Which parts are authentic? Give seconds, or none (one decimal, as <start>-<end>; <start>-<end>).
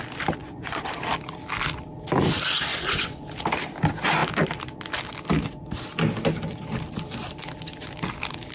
0.0-0.4; 1.0-2.7; 3.3-8.5